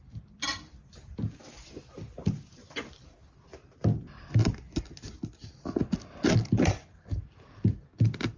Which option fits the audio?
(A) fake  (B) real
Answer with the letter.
B